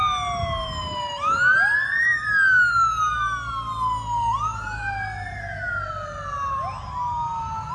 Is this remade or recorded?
recorded